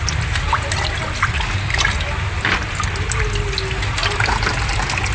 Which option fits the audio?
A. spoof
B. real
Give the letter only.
B